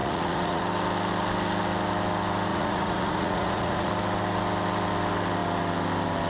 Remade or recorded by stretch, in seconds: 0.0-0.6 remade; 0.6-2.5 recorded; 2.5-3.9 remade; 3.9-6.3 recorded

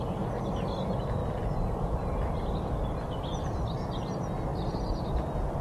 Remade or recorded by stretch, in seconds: 0.0-5.6 recorded

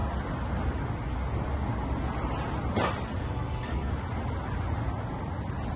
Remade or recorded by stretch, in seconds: 0.0-3.2 recorded; 3.2-3.9 remade; 3.9-5.8 recorded

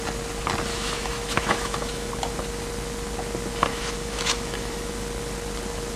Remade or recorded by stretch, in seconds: 0.0-0.7 recorded; 0.7-2.1 remade; 2.1-3.7 recorded; 3.7-4.9 remade; 4.9-6.0 recorded

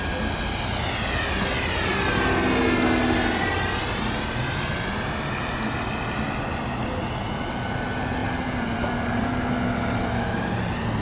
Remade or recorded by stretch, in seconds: 0.0-11.0 recorded

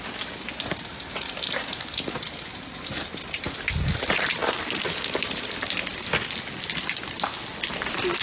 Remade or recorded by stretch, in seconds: 0.0-8.2 recorded